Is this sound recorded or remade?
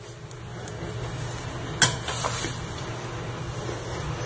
recorded